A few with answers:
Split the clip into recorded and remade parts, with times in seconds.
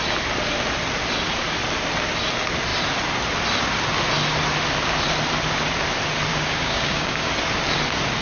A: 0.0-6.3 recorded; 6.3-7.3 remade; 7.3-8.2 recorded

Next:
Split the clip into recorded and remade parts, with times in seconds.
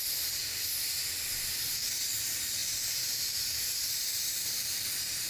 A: 0.0-0.4 remade; 0.4-1.7 recorded; 1.7-5.3 remade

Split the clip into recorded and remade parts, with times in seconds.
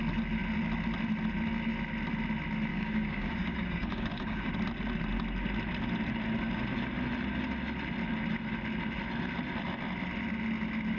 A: 0.0-2.7 recorded; 2.7-4.5 remade; 4.5-11.0 recorded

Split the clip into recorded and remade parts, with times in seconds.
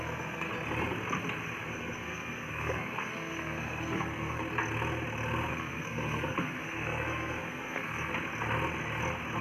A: 0.0-0.5 remade; 0.5-1.6 recorded; 1.6-4.4 remade; 4.4-5.5 recorded; 5.5-8.1 remade; 8.1-9.4 recorded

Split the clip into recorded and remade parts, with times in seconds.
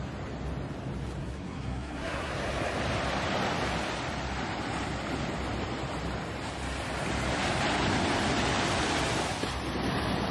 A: 0.0-1.2 recorded; 1.2-2.3 remade; 2.3-10.3 recorded